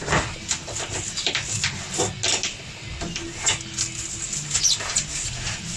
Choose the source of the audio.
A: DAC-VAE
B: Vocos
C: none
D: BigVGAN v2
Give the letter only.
C